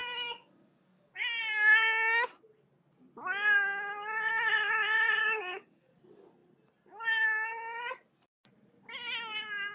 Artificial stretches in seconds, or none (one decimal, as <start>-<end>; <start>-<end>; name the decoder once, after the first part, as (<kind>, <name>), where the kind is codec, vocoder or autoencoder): 0.0-1.4 (codec, DAC); 5.2-5.9